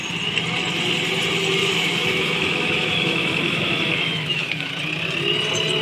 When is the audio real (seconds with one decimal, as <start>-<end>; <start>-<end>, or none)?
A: 0.0-1.6; 4.7-5.8